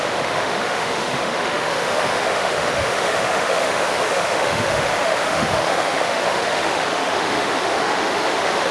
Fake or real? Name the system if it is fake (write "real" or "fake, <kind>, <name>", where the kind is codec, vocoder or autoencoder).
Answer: fake, autoencoder, DAC-VAE